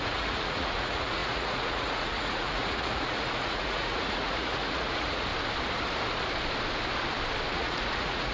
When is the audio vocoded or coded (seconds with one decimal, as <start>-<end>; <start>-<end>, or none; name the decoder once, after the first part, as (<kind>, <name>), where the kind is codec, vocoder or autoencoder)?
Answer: 0.0-5.3 (vocoder, Vocos); 7.5-8.3